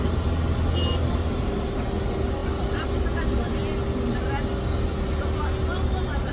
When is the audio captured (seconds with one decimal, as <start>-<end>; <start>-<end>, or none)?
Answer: 0.0-6.3